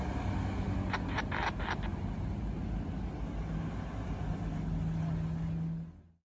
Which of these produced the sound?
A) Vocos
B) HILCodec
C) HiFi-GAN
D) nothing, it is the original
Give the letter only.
D